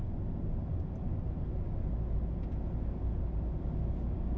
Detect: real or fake real